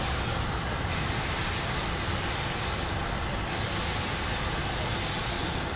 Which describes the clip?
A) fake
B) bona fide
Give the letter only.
B